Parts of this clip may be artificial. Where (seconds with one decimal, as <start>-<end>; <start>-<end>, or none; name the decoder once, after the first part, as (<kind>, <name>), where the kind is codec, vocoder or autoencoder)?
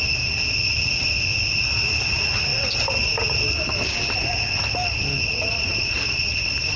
none